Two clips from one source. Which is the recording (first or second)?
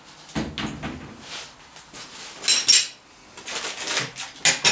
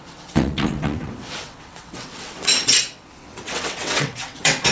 first